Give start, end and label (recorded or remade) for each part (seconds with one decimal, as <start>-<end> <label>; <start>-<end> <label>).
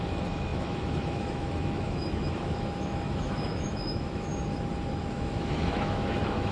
0.0-4.3 remade; 4.3-5.0 recorded; 5.0-6.5 remade